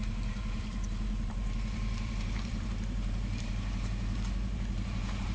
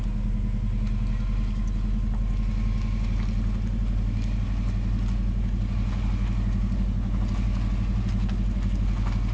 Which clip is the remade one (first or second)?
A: first